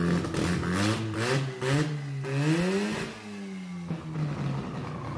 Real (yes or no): yes